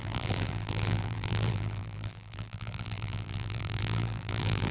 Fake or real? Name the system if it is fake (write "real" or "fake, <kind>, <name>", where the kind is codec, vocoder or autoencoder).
fake, vocoder, BigVGAN v2